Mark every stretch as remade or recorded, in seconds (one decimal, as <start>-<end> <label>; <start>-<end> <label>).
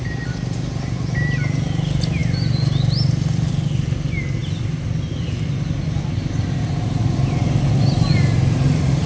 0.0-9.1 recorded